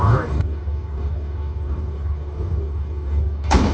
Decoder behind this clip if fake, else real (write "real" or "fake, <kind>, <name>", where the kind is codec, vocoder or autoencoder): fake, codec, DAC